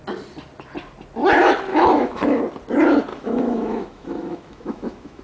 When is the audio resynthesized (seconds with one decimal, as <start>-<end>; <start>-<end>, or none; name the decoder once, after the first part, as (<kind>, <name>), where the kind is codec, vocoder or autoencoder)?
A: 1.7-2.4 (autoencoder, DAC-VAE); 3.1-5.2